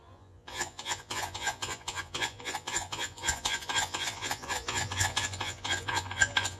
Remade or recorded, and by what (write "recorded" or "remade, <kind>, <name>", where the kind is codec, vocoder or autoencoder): remade, vocoder, Vocos